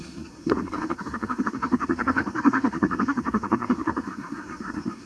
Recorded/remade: remade